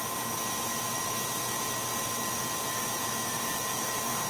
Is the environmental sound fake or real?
real